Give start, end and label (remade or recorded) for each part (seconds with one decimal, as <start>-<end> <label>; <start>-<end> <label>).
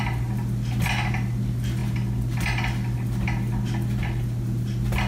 0.0-5.1 recorded